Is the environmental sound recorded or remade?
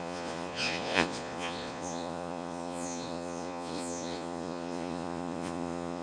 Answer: remade